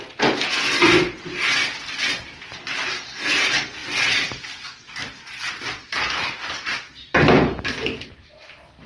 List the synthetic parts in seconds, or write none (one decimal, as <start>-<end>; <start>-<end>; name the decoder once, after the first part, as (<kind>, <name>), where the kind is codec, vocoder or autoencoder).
none